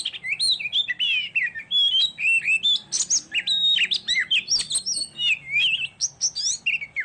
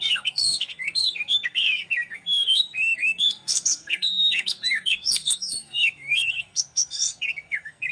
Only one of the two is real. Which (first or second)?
first